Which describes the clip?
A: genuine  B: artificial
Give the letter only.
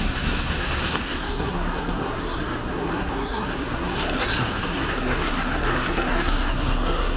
B